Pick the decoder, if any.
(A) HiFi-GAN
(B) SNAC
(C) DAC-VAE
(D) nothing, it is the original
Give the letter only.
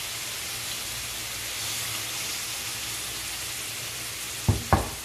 D